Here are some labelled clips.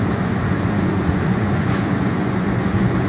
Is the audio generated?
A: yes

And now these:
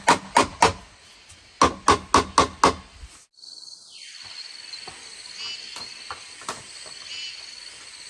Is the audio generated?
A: no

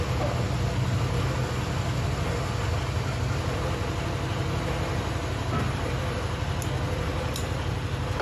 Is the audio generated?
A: no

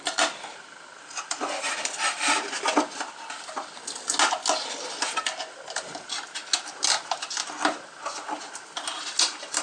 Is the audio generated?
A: no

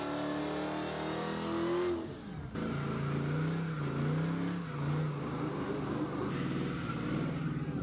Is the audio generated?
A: no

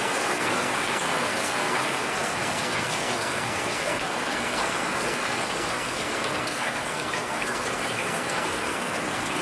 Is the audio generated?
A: yes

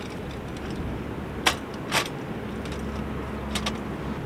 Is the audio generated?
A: no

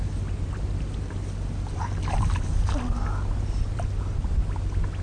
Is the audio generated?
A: no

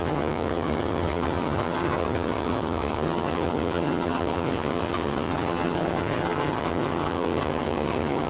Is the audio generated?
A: yes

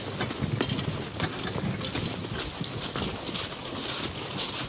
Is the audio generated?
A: no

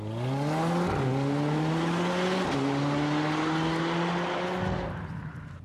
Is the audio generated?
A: no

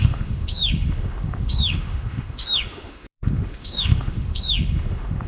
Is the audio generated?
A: yes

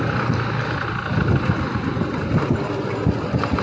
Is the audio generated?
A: no